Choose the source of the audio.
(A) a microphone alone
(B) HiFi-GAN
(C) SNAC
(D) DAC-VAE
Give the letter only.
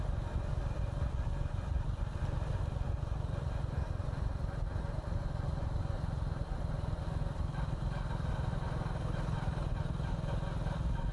A